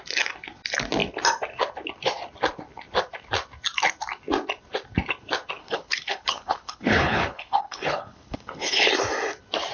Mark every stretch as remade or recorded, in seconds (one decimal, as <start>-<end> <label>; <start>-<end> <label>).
0.0-5.6 recorded; 5.6-8.9 remade; 8.9-9.7 recorded